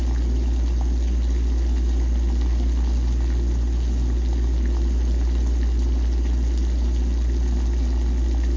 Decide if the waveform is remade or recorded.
recorded